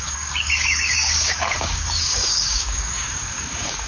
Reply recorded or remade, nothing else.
remade